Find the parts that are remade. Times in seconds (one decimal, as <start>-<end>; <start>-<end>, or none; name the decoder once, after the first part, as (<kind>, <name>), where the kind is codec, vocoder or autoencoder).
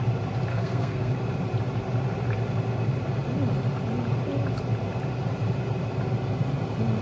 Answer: 0.5-1.1 (codec, SNAC)